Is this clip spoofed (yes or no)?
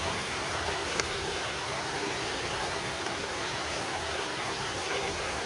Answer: yes